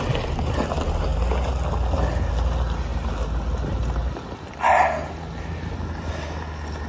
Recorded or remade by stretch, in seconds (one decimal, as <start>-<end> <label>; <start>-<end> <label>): 0.0-6.9 recorded